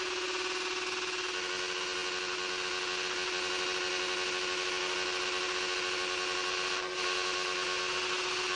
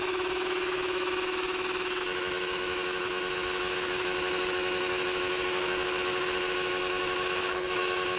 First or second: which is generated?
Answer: second